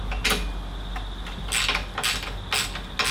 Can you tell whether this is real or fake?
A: real